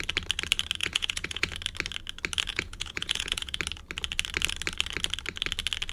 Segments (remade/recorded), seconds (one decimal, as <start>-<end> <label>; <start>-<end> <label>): 0.0-0.8 recorded; 0.8-1.5 remade; 1.5-2.5 recorded; 2.5-3.6 remade; 3.6-5.9 recorded